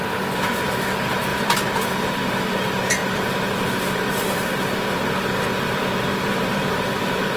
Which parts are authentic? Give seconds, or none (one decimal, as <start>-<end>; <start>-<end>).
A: 0.0-1.3; 2.1-3.0; 5.0-6.1